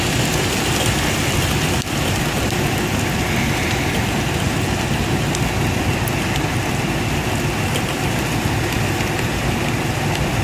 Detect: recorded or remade recorded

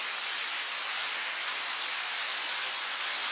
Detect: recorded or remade recorded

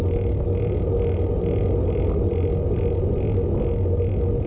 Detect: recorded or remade recorded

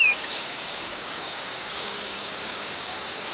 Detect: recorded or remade remade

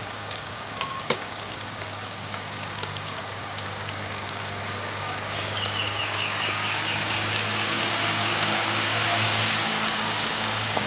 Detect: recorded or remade remade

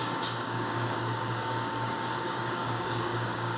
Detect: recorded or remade remade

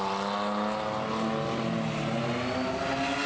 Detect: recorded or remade recorded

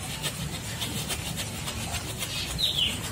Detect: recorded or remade recorded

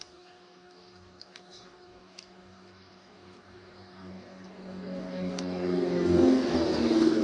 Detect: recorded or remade remade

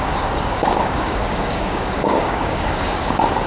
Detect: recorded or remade remade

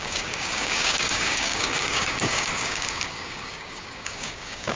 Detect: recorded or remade remade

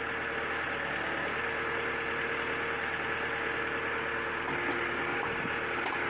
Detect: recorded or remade recorded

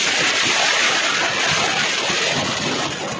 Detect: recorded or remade recorded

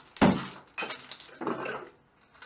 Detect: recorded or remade recorded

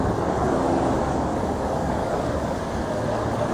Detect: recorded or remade remade